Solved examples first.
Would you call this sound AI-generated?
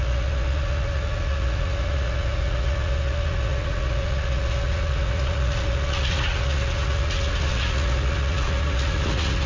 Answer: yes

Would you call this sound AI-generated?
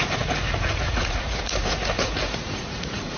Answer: yes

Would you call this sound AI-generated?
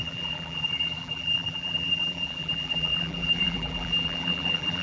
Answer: yes